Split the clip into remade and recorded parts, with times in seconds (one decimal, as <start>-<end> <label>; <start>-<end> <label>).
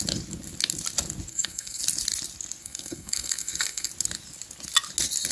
0.0-1.3 recorded; 1.3-1.8 remade; 1.8-2.6 recorded; 2.6-3.9 remade; 3.9-5.3 recorded